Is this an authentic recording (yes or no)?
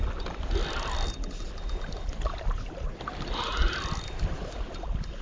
yes